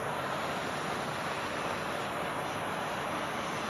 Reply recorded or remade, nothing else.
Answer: recorded